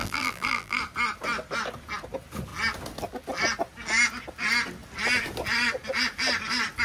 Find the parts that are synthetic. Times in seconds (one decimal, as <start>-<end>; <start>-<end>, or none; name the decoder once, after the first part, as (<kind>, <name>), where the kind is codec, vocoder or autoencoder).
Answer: 0.0-0.8 (vocoder, BigVGAN v2)